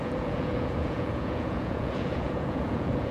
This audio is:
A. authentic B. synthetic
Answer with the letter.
B